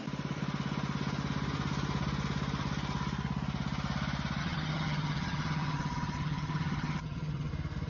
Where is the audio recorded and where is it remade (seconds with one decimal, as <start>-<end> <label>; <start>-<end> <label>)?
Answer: 0.0-4.4 recorded; 4.4-7.5 remade; 7.5-7.9 recorded

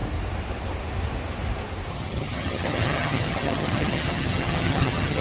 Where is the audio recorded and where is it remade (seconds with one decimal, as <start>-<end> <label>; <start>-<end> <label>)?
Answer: 0.0-1.9 recorded; 1.9-5.2 remade

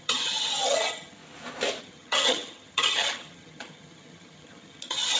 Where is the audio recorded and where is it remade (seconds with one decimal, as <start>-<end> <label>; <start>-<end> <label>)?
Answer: 0.0-1.2 remade; 1.2-1.8 recorded; 1.8-5.2 remade

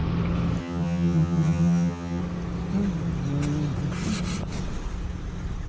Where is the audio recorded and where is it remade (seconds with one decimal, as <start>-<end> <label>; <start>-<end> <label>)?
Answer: 0.0-0.6 recorded; 0.6-2.2 remade; 2.2-5.7 recorded